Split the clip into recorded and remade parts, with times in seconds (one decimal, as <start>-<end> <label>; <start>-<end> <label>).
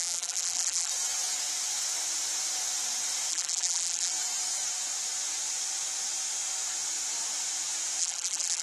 0.0-0.9 remade; 0.9-3.3 recorded; 3.3-4.1 remade; 4.1-8.0 recorded; 8.0-8.6 remade